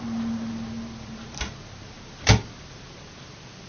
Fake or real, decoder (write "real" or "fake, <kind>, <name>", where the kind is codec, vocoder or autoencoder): real